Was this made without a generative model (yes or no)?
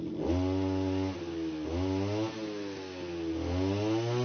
yes